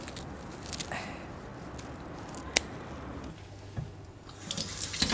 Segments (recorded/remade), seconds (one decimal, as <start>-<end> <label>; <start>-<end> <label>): 0.0-5.1 recorded